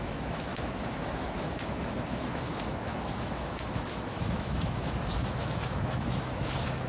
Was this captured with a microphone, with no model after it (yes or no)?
no